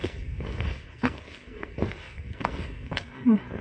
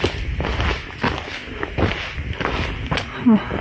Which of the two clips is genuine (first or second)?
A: second